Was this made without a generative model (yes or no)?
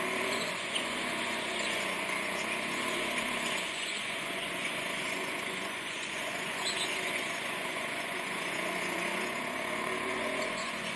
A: no